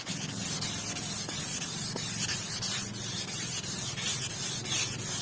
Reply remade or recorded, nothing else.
recorded